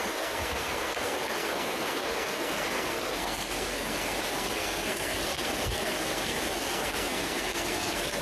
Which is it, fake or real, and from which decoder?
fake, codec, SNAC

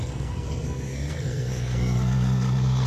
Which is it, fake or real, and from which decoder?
fake, codec, SNAC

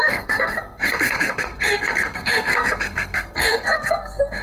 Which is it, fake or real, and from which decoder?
fake, codec, SNAC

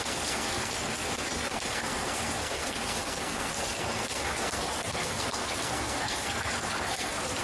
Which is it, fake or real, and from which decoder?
fake, codec, SNAC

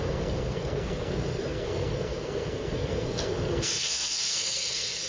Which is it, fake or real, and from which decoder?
fake, codec, SNAC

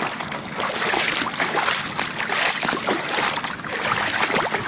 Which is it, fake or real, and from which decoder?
real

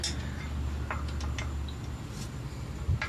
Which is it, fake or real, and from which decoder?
real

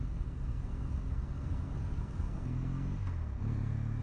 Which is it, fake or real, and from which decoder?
fake, codec, SNAC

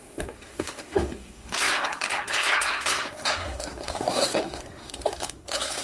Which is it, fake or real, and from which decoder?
fake, codec, SNAC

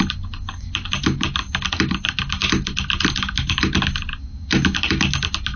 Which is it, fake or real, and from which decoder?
real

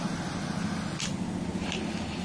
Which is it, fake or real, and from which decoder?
real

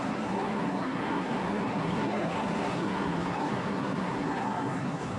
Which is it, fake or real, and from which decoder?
fake, codec, SNAC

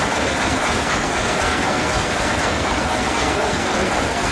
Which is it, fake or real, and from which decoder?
fake, codec, SNAC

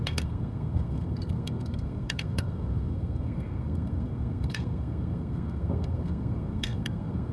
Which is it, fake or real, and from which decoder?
fake, codec, SNAC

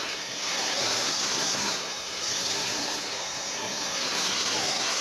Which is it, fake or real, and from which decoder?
fake, codec, SNAC